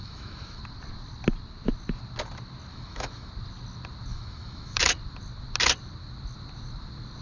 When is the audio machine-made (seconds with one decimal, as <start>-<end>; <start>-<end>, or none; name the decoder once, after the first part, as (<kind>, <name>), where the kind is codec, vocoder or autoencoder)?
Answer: 0.0-0.6 (autoencoder, DAC-VAE); 2.7-3.3; 4.1-4.8